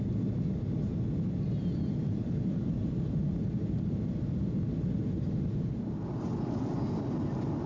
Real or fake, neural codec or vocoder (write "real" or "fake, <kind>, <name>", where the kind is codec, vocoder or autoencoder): real